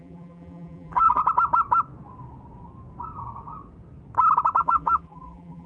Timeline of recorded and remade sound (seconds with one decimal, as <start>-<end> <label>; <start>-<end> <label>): 0.0-1.2 remade; 1.2-4.6 recorded; 4.6-5.7 remade